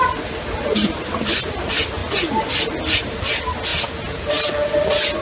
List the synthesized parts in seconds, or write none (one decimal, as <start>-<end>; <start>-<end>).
3.7-4.3

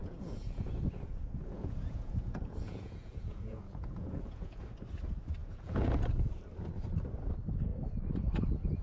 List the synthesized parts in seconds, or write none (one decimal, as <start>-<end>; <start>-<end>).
0.0-4.6; 5.4-6.3

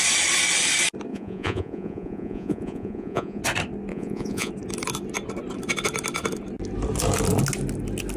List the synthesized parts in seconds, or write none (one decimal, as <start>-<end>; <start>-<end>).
1.1-3.4; 3.9-4.5

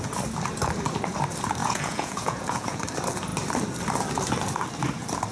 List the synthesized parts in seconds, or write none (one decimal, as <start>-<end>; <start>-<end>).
1.6-2.8